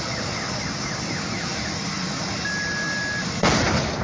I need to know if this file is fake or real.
real